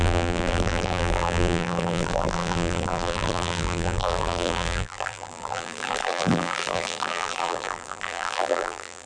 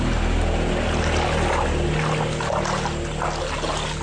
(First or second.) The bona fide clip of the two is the second